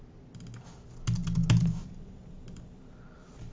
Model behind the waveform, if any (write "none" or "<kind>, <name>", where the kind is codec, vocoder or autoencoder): none